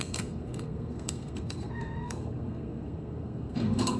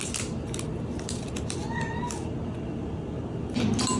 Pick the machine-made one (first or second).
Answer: first